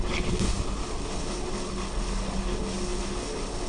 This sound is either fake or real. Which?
fake